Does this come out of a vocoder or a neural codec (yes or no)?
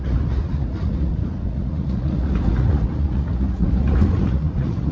yes